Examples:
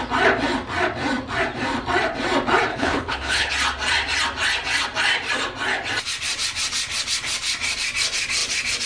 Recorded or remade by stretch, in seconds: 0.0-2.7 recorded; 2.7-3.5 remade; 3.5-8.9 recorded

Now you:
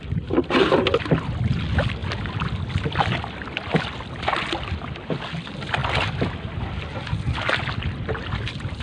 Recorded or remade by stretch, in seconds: 0.0-8.8 recorded

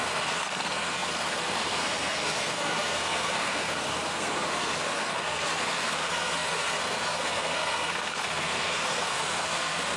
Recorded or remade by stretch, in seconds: 0.0-10.0 remade

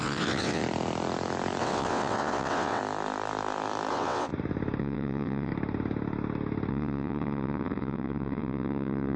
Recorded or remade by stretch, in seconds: 0.0-0.6 remade; 0.6-1.6 recorded; 1.6-2.8 remade; 2.8-3.9 recorded; 3.9-4.3 remade; 4.3-4.8 recorded; 4.8-5.5 remade; 5.5-6.7 recorded; 6.7-9.2 remade

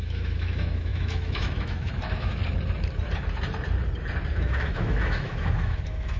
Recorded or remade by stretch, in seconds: 0.0-2.4 remade; 2.4-4.3 recorded; 4.3-6.2 remade